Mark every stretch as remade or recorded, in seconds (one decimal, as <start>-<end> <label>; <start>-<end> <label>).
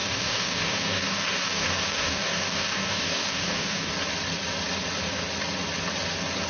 0.0-3.9 remade; 3.9-6.5 recorded